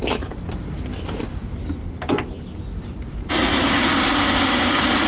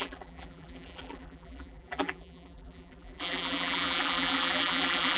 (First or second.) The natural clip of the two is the first